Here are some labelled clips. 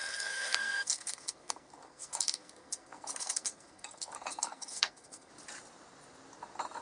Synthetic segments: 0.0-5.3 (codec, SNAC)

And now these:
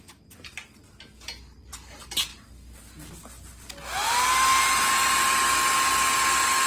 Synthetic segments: none

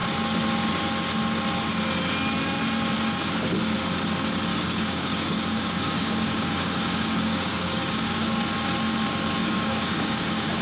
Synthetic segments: 4.5-8.4 (codec, DAC); 9.4-10.6